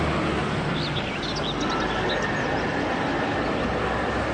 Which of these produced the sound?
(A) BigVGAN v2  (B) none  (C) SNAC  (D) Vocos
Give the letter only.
B